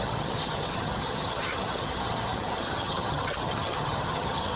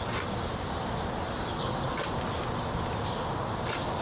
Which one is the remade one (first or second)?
first